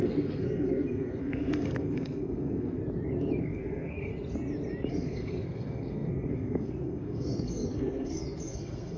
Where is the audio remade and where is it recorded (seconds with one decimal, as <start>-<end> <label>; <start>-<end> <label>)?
0.0-2.8 remade; 2.8-3.4 recorded; 3.4-4.1 remade; 4.1-4.9 recorded; 4.9-9.0 remade